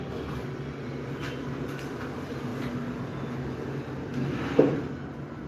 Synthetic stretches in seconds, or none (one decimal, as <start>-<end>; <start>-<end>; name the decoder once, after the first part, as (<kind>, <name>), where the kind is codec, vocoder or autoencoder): none